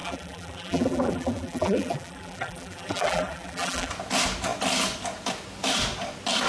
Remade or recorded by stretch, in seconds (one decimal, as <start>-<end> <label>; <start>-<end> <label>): 0.0-3.9 remade; 3.9-6.5 recorded